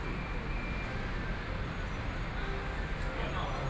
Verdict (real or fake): real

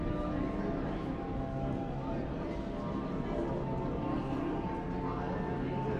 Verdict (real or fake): real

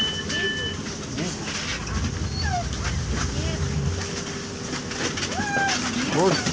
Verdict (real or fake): real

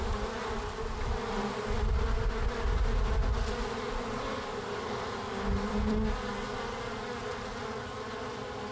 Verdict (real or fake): real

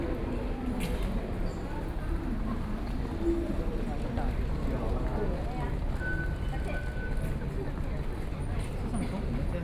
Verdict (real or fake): real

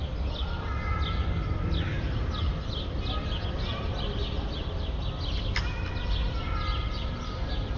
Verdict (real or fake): real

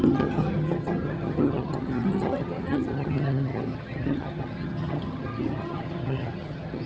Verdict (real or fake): fake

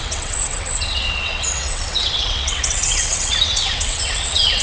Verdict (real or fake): fake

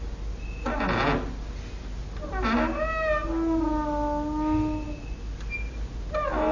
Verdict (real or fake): real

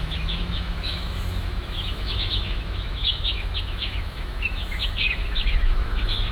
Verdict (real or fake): fake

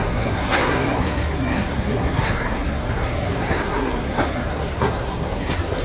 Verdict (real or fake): fake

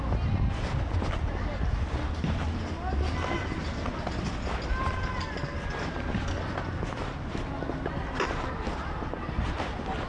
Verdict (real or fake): real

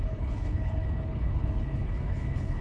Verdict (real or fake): fake